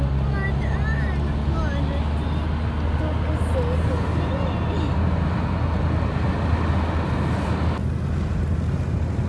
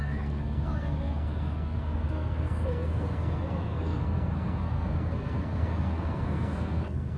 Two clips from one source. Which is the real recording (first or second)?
first